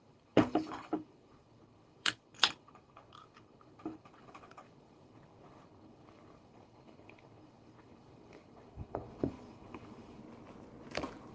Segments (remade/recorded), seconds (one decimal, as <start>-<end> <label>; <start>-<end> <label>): 0.0-10.2 remade; 10.2-11.3 recorded